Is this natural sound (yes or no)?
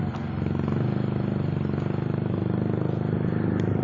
yes